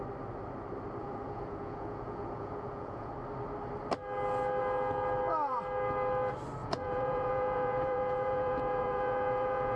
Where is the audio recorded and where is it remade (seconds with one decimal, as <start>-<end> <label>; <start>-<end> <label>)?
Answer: 0.0-1.0 recorded; 1.0-3.1 remade; 3.1-6.6 recorded; 6.6-9.8 remade